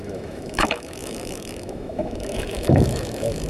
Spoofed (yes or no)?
yes